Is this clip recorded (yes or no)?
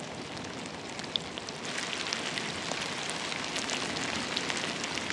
yes